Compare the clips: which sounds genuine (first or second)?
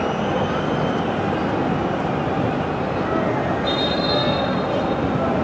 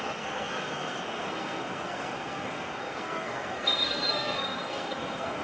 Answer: first